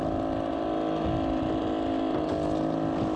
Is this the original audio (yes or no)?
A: yes